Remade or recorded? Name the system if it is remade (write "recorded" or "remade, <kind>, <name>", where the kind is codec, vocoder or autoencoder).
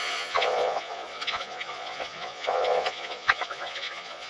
remade, vocoder, Vocos